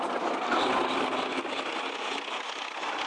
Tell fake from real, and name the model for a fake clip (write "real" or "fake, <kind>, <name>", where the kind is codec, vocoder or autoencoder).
real